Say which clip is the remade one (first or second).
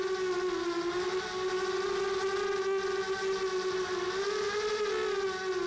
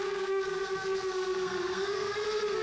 second